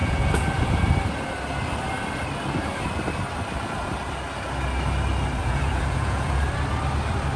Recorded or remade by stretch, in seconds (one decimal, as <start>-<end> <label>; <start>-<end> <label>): 0.0-0.8 remade; 0.8-5.4 recorded; 5.4-6.4 remade; 6.4-7.4 recorded